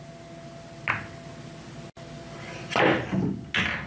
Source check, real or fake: real